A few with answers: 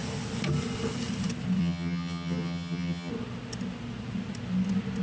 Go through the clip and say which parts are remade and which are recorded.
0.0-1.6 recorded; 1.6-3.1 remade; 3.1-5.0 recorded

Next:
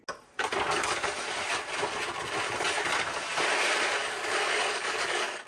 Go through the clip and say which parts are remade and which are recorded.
0.0-4.0 recorded; 4.0-5.5 remade

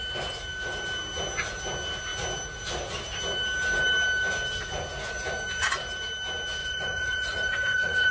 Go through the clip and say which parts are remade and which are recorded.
0.0-6.6 recorded; 6.6-8.1 remade

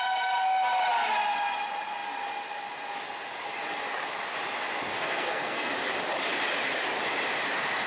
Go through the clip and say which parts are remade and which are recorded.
0.0-4.9 recorded; 4.9-5.7 remade; 5.7-7.9 recorded

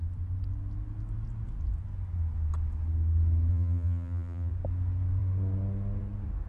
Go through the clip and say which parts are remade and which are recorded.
0.0-3.5 recorded; 3.5-4.5 remade; 4.5-6.5 recorded

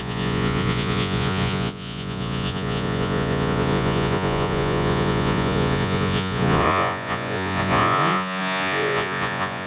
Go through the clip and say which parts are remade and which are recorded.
0.0-9.7 remade